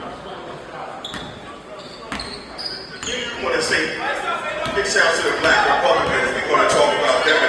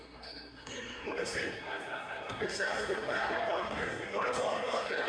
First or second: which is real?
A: first